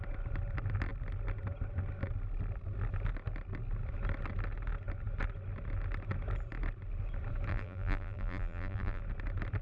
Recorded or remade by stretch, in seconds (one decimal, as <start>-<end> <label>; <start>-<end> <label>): 0.0-7.5 recorded; 7.5-9.0 remade; 9.0-9.6 recorded